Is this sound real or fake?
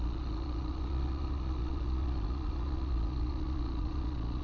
fake